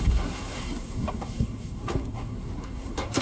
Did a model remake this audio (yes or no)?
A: yes